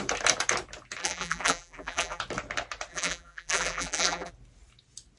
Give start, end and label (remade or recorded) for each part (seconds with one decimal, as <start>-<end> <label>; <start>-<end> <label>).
0.0-1.0 recorded; 1.0-2.2 remade; 2.2-2.9 recorded; 2.9-4.3 remade; 4.3-5.2 recorded